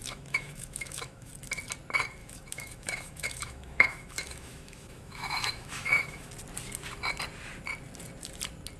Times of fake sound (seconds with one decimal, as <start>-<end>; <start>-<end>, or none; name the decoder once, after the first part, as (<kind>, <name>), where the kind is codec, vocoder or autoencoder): 0.0-1.3 (autoencoder, DAC-VAE); 2.2-6.3